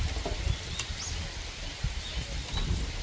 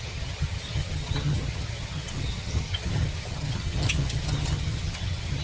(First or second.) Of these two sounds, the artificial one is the second